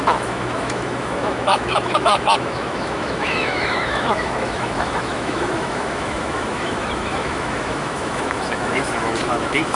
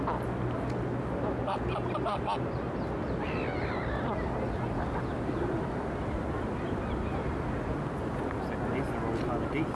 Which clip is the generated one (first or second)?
first